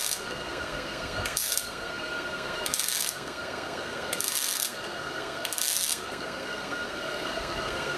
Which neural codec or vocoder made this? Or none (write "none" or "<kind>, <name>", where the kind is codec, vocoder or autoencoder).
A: codec, SNAC